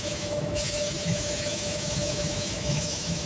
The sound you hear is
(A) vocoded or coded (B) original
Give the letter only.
A